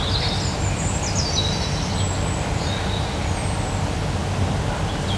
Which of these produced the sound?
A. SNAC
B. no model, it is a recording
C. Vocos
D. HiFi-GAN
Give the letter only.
B